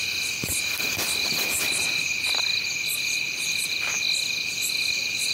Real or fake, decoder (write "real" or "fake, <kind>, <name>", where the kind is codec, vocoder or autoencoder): real